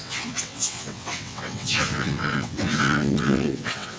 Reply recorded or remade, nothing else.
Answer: remade